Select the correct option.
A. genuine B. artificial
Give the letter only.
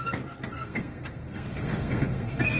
B